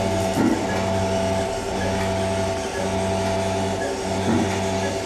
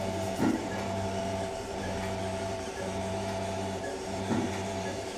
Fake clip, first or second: second